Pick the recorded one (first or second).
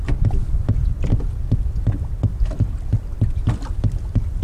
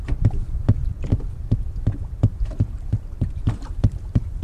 first